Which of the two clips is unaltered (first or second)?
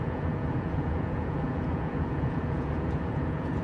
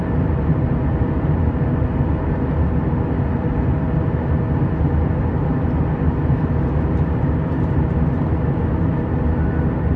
second